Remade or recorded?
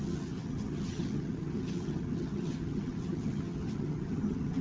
remade